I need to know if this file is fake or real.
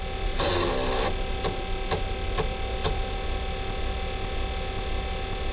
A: real